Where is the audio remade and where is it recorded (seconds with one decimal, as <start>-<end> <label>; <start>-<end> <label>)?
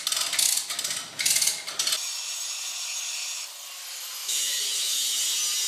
0.0-4.2 recorded; 4.2-5.2 remade; 5.2-5.7 recorded